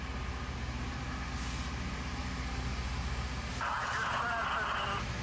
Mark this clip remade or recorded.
recorded